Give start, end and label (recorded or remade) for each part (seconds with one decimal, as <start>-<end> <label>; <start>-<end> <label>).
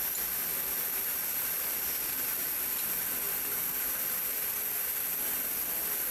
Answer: 0.0-6.1 recorded